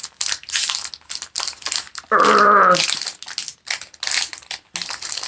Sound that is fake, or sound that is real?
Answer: real